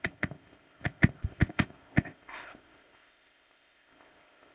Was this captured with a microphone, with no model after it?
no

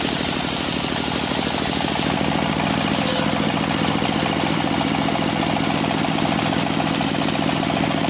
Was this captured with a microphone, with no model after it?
yes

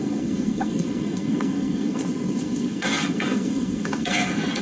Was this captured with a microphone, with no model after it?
no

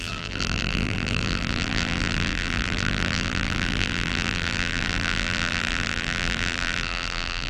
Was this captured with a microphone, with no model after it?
no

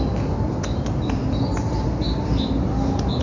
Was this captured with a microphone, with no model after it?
yes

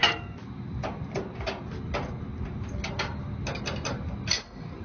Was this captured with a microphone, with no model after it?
yes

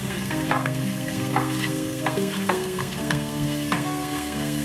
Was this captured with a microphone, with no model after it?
no